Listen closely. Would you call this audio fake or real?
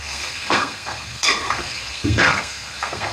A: fake